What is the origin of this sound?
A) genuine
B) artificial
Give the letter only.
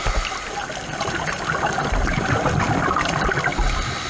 A